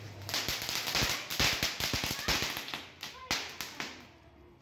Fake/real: real